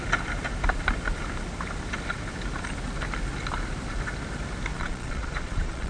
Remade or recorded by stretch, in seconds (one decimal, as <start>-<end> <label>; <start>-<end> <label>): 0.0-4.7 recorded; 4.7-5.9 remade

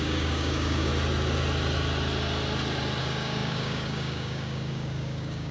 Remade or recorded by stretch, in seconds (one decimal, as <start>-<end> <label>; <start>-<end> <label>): 0.0-0.9 remade; 0.9-3.0 recorded; 3.0-5.5 remade

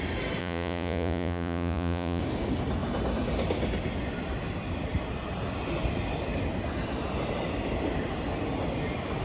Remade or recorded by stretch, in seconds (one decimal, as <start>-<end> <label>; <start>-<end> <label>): 0.0-0.4 recorded; 0.4-2.2 remade; 2.2-9.2 recorded

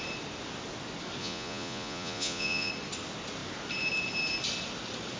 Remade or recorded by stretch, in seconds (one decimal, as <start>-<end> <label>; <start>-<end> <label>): 0.0-1.2 recorded; 1.2-2.7 remade; 2.7-5.2 recorded

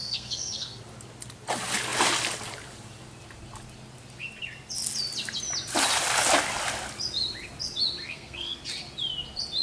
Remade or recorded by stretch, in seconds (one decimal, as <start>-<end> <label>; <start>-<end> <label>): 0.0-0.8 remade; 0.8-8.0 recorded; 8.0-8.6 remade; 8.6-9.6 recorded